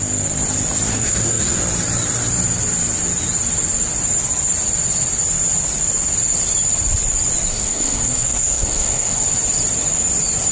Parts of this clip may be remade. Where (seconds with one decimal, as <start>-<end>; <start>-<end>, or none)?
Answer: 0.9-1.6; 7.5-9.2